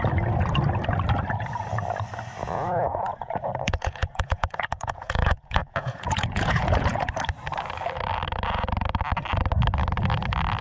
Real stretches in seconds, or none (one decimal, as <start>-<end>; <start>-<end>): 0.0-2.4; 7.1-10.6